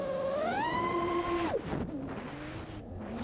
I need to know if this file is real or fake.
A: real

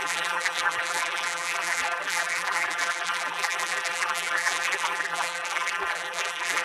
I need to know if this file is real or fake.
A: fake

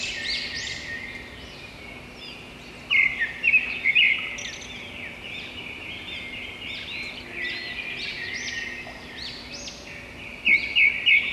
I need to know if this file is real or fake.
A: real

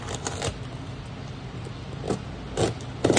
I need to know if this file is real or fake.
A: real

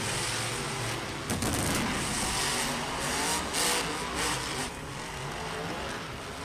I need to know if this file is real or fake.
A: real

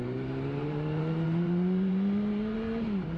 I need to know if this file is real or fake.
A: fake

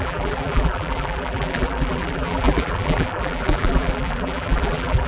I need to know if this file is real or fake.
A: fake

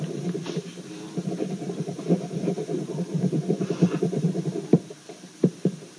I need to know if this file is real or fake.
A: fake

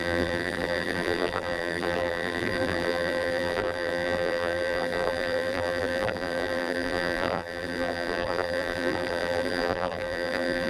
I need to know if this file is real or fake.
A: fake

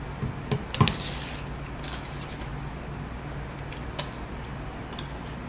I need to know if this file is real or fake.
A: real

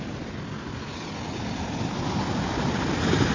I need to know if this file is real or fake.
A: real